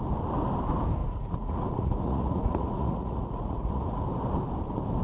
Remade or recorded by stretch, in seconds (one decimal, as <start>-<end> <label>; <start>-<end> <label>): 0.0-1.0 recorded; 1.0-4.0 remade; 4.0-5.0 recorded